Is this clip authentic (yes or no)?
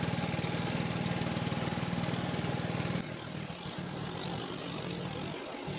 yes